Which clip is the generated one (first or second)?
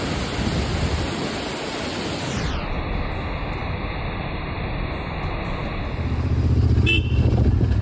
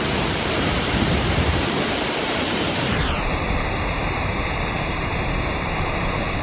second